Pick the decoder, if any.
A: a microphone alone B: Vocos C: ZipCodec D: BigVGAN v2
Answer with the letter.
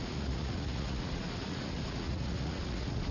B